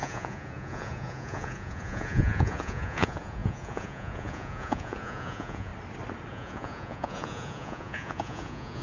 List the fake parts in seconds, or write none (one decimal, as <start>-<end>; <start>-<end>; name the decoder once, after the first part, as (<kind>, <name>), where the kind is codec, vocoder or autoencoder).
0.0-5.7 (vocoder, Vocos); 6.3-8.8